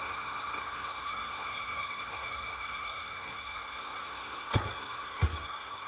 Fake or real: fake